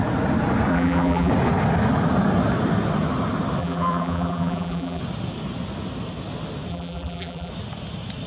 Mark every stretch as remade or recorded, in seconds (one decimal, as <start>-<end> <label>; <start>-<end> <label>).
0.0-0.7 recorded; 0.7-1.3 remade; 1.3-3.6 recorded; 3.6-5.0 remade; 5.0-6.7 recorded; 6.7-7.5 remade; 7.5-8.3 recorded